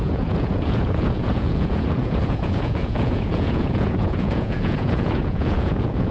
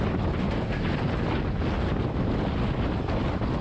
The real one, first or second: second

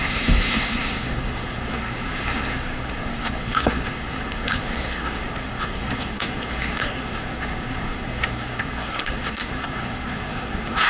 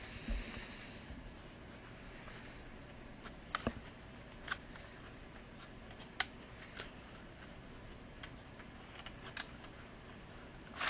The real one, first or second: second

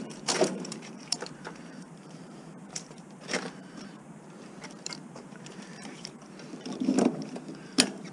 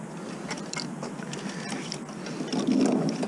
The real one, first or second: second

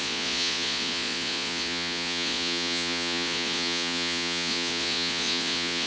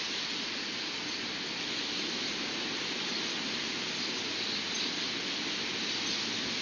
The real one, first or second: second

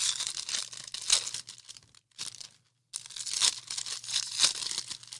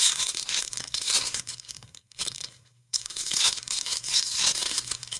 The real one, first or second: first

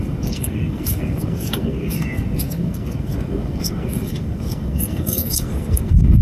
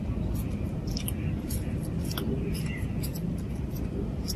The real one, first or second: second